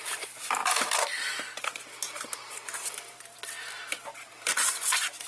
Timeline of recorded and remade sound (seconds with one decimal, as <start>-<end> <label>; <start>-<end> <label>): 0.0-0.6 remade; 0.6-2.9 recorded; 2.9-5.3 remade